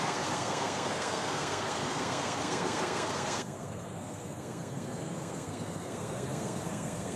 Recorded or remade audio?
remade